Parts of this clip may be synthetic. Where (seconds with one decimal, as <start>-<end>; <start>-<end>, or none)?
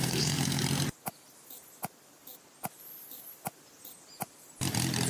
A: 0.0-0.6